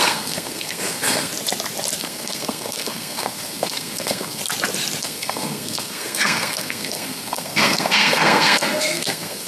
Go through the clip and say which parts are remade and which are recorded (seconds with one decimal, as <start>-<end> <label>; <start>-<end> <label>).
0.0-1.3 remade; 1.3-2.0 recorded; 2.0-4.4 remade; 4.4-5.0 recorded; 5.0-9.5 remade